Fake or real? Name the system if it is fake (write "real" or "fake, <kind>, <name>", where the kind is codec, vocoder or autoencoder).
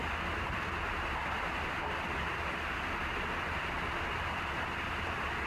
real